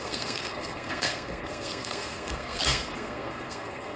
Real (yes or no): no